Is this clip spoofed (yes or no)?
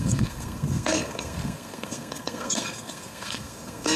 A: yes